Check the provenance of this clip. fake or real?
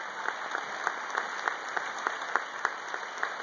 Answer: real